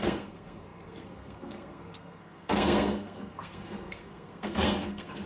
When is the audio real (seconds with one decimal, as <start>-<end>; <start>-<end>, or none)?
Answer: none